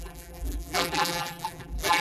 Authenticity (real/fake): fake